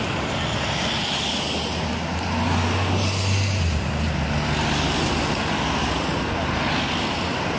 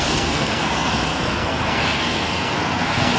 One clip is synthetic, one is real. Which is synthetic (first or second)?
second